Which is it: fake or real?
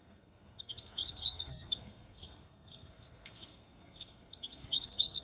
fake